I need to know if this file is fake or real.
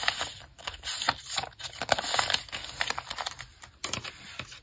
real